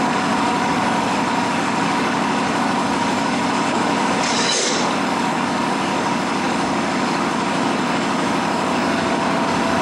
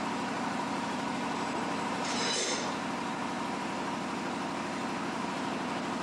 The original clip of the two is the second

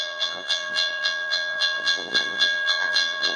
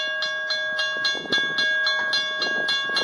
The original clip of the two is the second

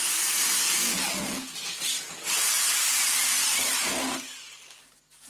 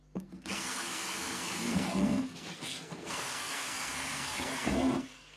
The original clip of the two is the first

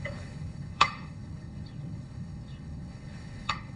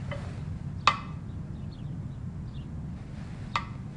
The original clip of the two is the second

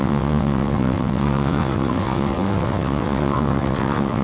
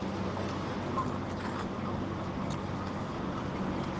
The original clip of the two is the second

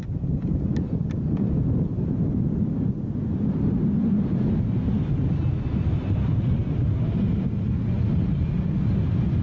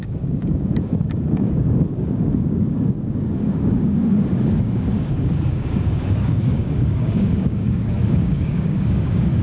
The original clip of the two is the first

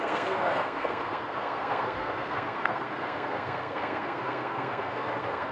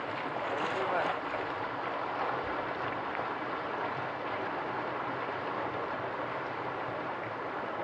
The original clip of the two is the second